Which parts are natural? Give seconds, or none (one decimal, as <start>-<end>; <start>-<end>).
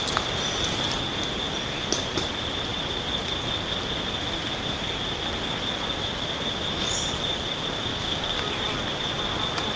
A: 0.0-7.9; 8.5-9.8